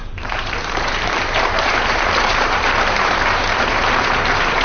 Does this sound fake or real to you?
fake